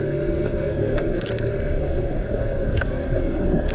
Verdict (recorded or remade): remade